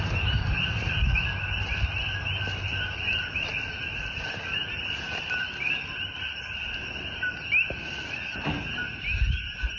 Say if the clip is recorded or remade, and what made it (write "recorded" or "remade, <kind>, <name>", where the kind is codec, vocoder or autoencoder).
recorded